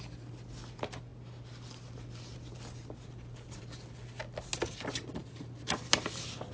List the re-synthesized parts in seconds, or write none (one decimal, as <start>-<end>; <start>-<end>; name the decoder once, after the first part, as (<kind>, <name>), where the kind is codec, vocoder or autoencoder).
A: none